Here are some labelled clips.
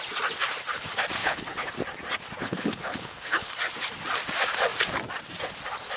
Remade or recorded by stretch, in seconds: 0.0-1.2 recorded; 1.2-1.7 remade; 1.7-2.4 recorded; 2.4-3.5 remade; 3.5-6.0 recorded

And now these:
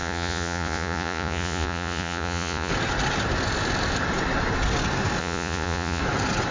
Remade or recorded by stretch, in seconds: 0.0-2.7 remade; 2.7-5.2 recorded; 5.2-6.0 remade; 6.0-6.5 recorded

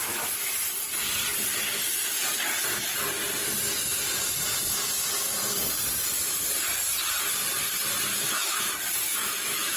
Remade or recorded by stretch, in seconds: 0.0-8.1 recorded; 8.1-8.6 remade; 8.6-9.0 recorded; 9.0-9.8 remade

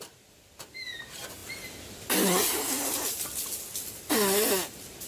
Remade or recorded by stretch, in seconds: 0.0-5.1 recorded

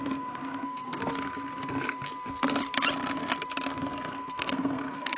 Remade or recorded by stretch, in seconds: 0.0-1.0 remade; 1.0-4.1 recorded; 4.1-5.2 remade

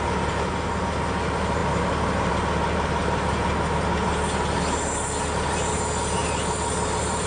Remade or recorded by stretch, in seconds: 0.0-3.0 recorded; 3.0-3.7 remade; 3.7-7.3 recorded